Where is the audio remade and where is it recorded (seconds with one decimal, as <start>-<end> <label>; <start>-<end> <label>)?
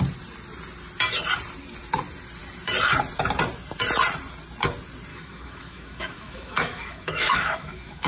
0.0-5.1 recorded; 5.1-8.1 remade